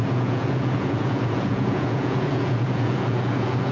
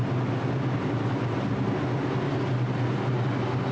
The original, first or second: second